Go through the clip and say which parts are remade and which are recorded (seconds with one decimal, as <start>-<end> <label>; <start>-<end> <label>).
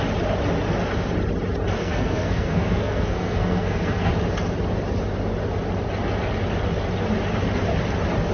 0.0-1.8 recorded; 1.8-4.1 remade; 4.1-8.3 recorded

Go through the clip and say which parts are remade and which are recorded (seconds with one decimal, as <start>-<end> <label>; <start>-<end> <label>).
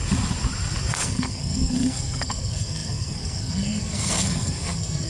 0.0-0.9 recorded; 0.9-5.1 remade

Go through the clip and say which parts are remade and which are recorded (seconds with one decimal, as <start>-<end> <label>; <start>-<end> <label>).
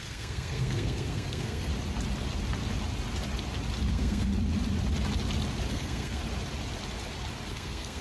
0.0-1.7 remade; 1.7-3.9 recorded; 3.9-4.3 remade; 4.3-5.7 recorded; 5.7-6.2 remade; 6.2-7.5 recorded; 7.5-8.0 remade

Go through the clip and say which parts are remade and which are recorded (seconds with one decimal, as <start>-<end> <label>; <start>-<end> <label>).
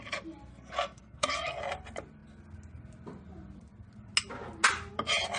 0.0-0.5 recorded; 0.5-1.6 remade; 1.6-5.4 recorded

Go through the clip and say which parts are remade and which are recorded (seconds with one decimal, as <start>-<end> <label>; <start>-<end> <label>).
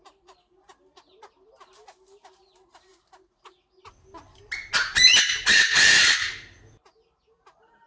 0.0-7.9 recorded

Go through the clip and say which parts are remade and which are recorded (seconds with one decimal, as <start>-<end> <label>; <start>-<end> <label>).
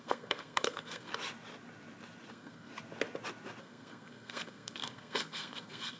0.0-1.1 remade; 1.1-2.3 recorded; 2.3-2.7 remade; 2.7-3.6 recorded; 3.6-6.0 remade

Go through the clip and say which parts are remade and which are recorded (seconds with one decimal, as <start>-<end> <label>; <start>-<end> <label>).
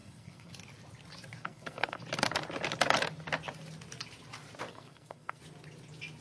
0.0-0.5 remade; 0.5-1.4 recorded; 1.4-2.0 remade; 2.0-4.7 recorded; 4.7-5.4 remade; 5.4-6.2 recorded